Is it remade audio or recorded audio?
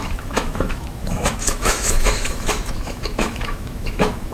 remade